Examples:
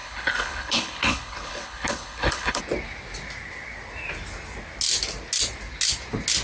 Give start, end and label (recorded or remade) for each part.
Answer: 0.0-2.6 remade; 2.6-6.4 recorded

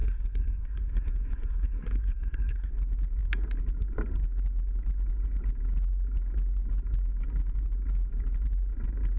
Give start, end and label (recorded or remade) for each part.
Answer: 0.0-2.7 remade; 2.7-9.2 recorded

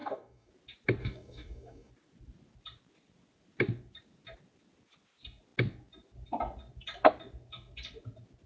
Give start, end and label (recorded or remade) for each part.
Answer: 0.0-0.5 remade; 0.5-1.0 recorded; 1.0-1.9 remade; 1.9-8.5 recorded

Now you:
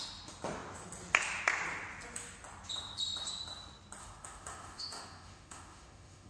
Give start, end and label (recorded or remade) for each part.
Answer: 0.0-4.0 recorded; 4.0-6.3 remade

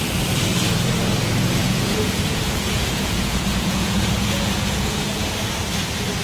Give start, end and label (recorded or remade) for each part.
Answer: 0.0-1.6 recorded; 1.6-5.3 remade; 5.3-6.2 recorded